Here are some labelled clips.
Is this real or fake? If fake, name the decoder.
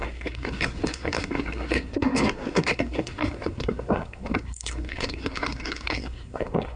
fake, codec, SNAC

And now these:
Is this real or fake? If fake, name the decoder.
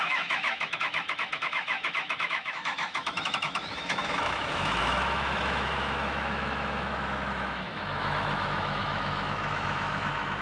fake, autoencoder, DAC-VAE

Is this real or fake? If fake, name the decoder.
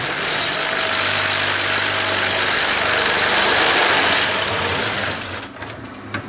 real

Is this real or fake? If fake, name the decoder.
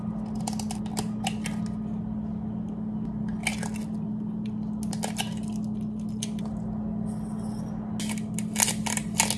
real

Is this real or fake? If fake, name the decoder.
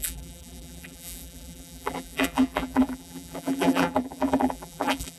fake, vocoder, BigVGAN v2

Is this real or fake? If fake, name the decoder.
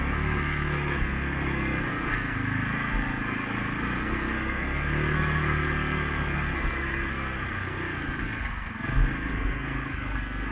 fake, codec, SNAC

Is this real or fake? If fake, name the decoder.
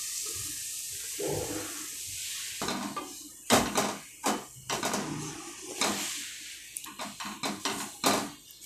real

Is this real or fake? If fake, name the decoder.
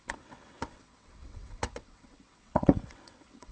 fake, vocoder, WaveNeXt